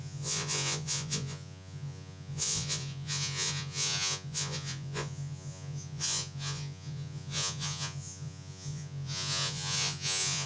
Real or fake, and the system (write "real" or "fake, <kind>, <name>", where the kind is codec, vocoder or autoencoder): fake, vocoder, Vocos